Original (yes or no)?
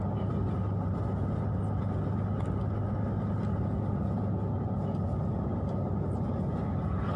yes